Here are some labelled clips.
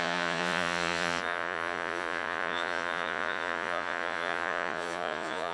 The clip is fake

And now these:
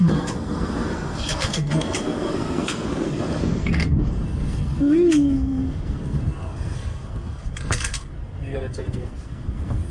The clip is fake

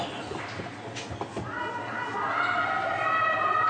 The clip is real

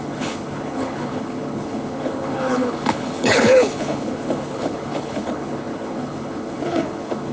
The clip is fake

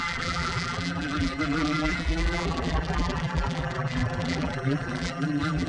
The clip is fake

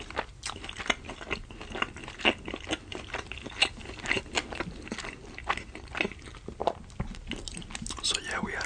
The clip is real